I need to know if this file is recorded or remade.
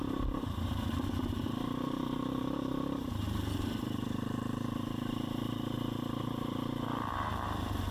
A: remade